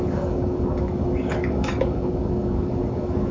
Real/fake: fake